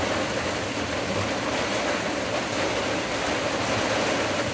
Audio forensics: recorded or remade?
recorded